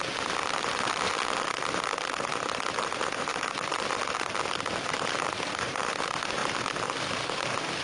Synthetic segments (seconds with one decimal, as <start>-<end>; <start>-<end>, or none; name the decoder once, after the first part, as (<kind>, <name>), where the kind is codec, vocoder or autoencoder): 3.3-3.9 (vocoder, BigVGAN v2)

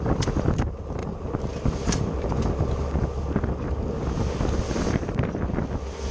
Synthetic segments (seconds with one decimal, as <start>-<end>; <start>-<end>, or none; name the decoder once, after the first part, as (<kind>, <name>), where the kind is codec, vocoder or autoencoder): 0.0-1.0 (vocoder, BigVGAN v2); 4.7-6.1